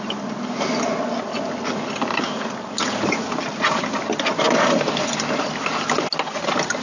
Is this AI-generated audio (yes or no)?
no